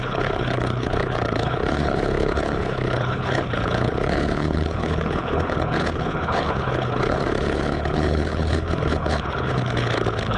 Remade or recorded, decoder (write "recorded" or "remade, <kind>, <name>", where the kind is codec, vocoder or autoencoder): remade, codec, HILCodec